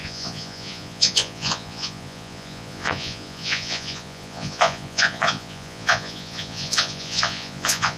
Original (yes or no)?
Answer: no